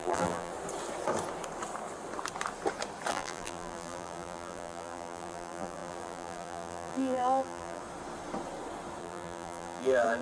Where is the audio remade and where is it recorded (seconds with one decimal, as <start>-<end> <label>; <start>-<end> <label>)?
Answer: 0.0-0.5 remade; 0.5-3.1 recorded; 3.1-7.8 remade; 7.8-9.0 recorded; 9.0-10.2 remade